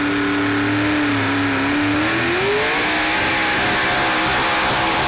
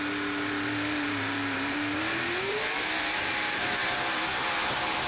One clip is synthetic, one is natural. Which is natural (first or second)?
first